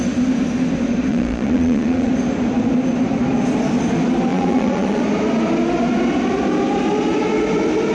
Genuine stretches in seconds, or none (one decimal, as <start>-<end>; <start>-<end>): 0.0-1.1; 2.1-4.3; 5.0-7.9